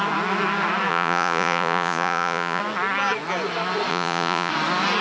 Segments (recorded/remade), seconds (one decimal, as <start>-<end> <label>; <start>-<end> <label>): 0.0-0.9 recorded; 0.9-2.6 remade; 2.6-3.9 recorded; 3.9-4.5 remade; 4.5-5.0 recorded